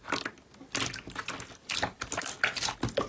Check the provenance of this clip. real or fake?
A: real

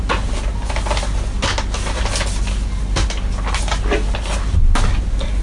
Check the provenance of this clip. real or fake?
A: real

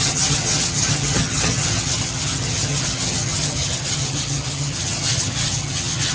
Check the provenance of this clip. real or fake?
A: fake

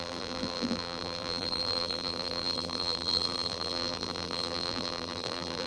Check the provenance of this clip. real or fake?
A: fake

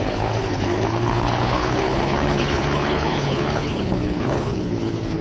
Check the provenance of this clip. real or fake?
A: fake